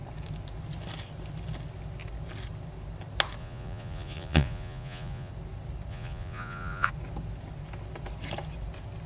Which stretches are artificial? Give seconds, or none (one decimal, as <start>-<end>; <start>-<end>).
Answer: 3.4-5.3; 5.9-6.9